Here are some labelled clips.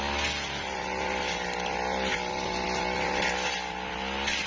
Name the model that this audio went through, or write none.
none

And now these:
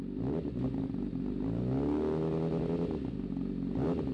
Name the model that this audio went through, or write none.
none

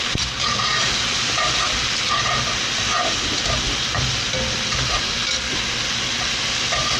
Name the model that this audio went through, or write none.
none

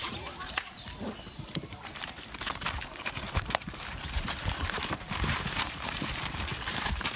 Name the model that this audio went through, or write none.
vocoder, BigVGAN v2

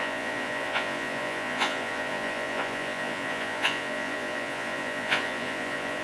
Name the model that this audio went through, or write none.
vocoder, Vocos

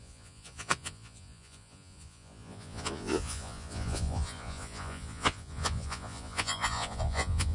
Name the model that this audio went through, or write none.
vocoder, Vocos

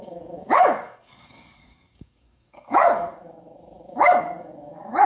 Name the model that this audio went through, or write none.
codec, DAC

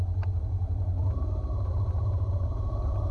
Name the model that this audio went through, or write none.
none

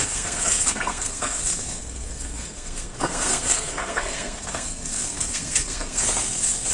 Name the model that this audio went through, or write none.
codec, SNAC